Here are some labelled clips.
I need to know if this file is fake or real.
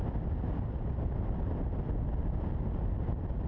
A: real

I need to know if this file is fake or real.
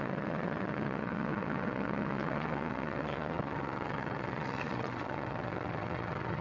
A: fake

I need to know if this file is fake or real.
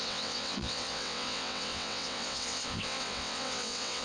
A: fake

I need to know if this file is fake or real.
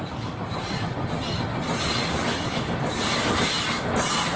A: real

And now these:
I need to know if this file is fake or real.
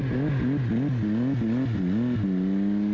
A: real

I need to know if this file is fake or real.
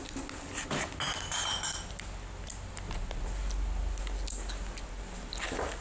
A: real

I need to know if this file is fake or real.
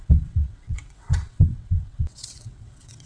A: fake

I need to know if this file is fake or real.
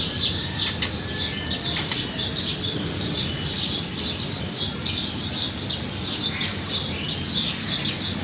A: real